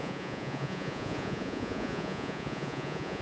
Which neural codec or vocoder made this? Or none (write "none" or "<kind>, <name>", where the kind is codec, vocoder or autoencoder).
vocoder, Vocos